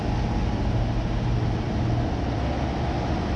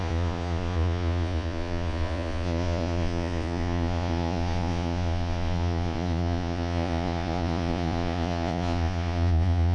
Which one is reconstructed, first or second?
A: second